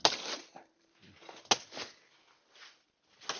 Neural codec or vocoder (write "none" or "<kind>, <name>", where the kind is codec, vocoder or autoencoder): none